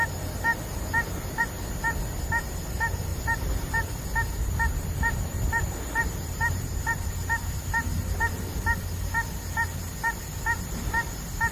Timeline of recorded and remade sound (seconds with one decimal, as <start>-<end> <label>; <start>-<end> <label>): 0.0-3.1 recorded; 3.1-3.9 remade; 3.9-6.0 recorded; 6.0-7.2 remade; 7.2-11.5 recorded